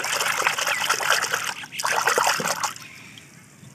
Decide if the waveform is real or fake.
real